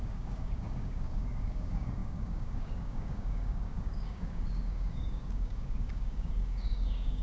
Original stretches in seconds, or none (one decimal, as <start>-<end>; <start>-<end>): none